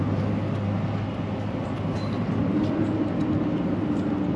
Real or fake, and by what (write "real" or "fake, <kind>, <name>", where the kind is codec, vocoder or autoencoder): real